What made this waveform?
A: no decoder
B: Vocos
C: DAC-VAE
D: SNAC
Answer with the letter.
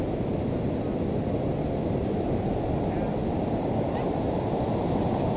A